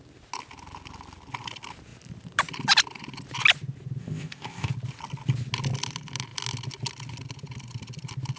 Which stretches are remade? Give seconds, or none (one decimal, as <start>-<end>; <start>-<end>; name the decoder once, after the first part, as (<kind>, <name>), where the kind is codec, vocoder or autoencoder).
4.0-4.7 (codec, ZipCodec)